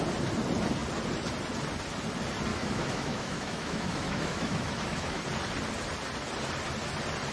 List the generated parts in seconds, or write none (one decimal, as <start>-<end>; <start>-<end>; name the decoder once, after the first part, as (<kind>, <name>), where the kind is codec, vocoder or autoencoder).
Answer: 2.5-5.2 (autoencoder, DAC-VAE)